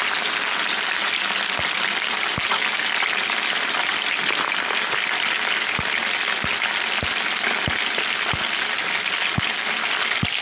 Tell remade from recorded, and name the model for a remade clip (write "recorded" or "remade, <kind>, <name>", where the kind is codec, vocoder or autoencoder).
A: recorded